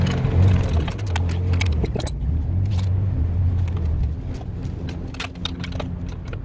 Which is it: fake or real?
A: real